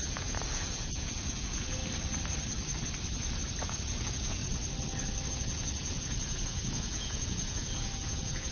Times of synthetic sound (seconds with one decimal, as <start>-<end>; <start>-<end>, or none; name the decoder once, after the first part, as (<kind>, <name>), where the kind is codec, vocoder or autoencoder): 0.0-1.8 (vocoder, Vocos); 3.6-4.4; 5.3-8.5